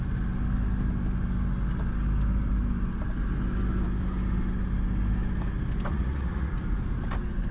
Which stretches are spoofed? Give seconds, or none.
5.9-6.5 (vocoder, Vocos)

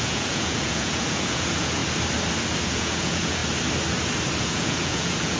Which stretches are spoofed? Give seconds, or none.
0.0-1.8 (vocoder, Vocos); 2.6-3.4; 4.4-5.4